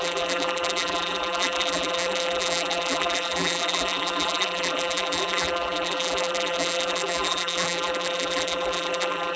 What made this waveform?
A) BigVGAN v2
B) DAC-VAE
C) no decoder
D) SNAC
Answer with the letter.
A